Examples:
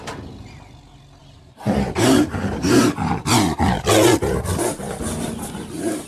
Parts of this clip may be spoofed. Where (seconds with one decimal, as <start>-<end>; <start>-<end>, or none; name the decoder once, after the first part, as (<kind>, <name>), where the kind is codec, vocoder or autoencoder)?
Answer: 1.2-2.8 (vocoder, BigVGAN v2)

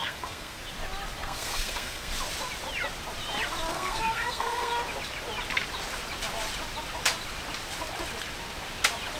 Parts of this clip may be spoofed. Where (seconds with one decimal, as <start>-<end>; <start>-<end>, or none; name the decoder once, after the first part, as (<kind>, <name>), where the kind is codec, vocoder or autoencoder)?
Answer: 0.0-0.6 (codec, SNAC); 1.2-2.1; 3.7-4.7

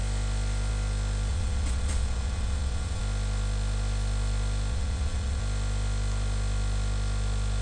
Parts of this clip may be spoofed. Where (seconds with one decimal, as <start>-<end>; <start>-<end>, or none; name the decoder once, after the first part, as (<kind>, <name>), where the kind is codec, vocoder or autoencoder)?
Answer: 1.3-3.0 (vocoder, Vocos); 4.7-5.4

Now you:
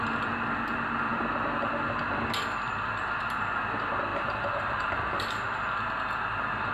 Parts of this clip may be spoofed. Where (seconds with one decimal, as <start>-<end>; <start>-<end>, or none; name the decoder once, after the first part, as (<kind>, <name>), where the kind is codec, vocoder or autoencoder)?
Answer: 4.1-5.6 (vocoder, BigVGAN v2)

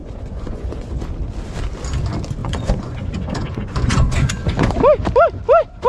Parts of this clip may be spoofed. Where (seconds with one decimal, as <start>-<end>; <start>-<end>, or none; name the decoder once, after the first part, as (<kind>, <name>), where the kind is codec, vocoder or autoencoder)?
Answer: 0.0-0.9 (vocoder, Vocos); 2.4-4.7

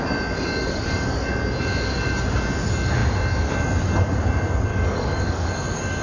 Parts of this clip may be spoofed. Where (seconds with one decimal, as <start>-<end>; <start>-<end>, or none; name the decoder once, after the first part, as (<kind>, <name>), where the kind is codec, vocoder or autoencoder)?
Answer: 0.6-1.3 (codec, DAC); 4.7-5.5

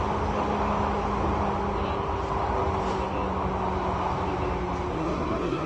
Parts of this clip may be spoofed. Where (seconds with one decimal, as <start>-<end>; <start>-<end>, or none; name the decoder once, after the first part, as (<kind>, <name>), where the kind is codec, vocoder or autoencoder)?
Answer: 4.9-5.7 (codec, SNAC)